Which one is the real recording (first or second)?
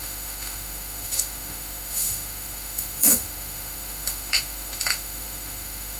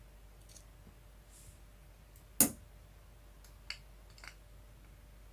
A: second